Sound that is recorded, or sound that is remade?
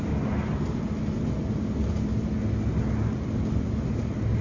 recorded